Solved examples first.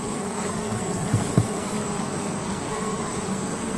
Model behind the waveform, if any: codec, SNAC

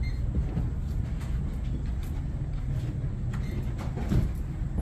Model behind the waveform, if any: none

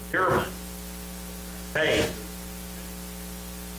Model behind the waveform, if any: none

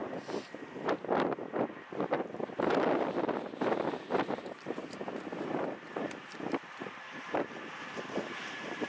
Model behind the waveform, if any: vocoder, BigVGAN v2